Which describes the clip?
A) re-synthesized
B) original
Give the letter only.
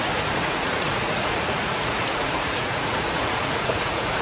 A